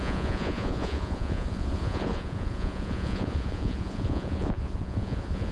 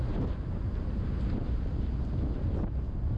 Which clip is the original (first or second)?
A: second